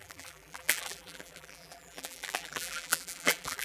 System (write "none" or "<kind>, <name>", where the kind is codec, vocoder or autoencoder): vocoder, BigVGAN v2